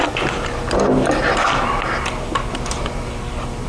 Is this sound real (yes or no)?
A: yes